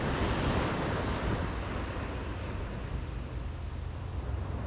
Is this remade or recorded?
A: recorded